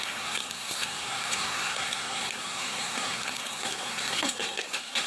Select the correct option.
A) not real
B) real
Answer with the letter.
A